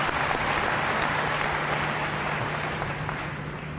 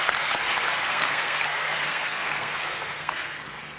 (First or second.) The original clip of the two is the first